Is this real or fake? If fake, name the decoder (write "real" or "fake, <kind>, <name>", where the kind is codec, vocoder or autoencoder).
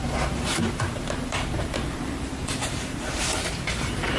fake, vocoder, BigVGAN v2